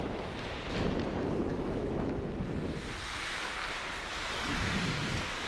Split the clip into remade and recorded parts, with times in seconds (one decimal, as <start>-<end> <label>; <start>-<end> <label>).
0.0-1.5 recorded; 1.5-2.1 remade; 2.1-5.5 recorded